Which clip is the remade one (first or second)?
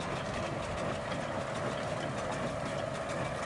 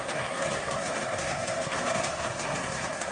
second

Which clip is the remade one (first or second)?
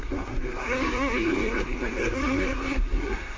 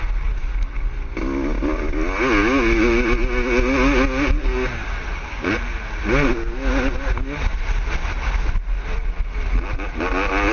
first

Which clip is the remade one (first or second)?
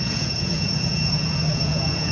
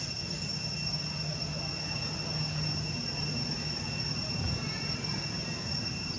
first